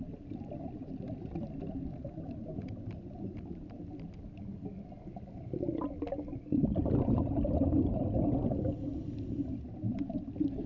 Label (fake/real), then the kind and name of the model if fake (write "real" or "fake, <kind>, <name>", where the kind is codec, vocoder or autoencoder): real